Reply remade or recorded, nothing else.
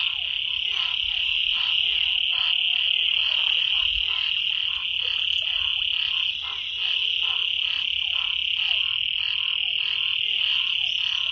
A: recorded